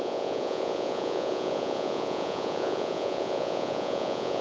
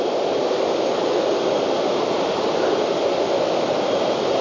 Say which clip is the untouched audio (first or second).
second